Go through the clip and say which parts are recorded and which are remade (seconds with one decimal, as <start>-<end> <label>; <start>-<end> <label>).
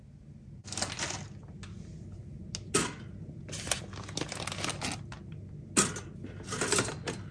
0.0-7.3 recorded